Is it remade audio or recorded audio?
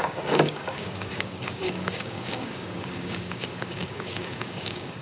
remade